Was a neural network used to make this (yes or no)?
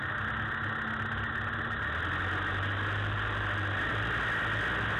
no